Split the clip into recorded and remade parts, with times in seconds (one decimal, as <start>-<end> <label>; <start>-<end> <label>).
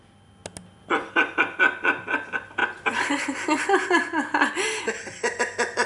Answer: 0.0-5.9 recorded